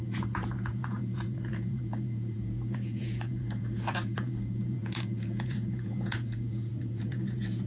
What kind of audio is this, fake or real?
fake